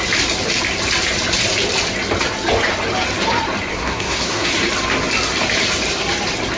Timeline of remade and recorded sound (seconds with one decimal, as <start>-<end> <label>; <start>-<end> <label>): 0.0-3.7 recorded; 3.7-4.5 remade; 4.5-6.6 recorded